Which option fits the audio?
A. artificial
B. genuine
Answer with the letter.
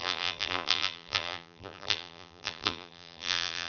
A